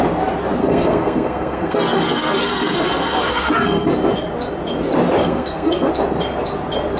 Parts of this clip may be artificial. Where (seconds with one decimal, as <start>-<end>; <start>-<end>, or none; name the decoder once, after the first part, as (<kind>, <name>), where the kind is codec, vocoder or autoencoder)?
0.6-2.8 (codec, SNAC); 3.3-3.9; 5.2-5.9